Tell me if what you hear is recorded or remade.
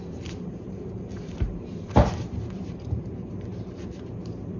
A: remade